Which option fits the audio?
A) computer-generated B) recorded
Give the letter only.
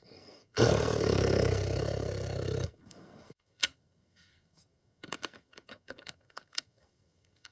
A